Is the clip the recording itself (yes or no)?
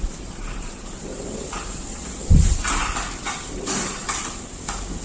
yes